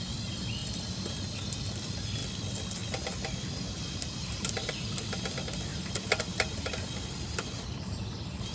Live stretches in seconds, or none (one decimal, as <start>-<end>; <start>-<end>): 0.0-0.6; 1.2-2.2; 4.7-8.5